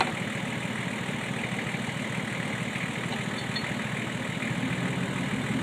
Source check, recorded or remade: recorded